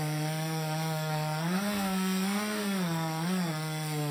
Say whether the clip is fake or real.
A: fake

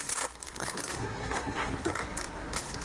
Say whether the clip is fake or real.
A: fake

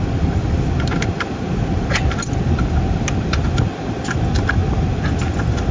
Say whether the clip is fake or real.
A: real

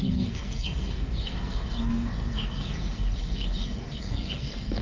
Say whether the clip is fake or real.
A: fake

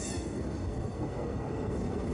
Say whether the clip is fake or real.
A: fake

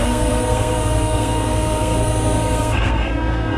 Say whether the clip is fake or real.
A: fake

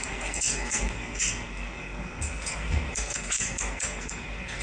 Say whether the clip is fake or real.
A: fake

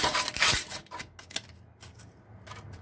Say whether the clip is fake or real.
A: real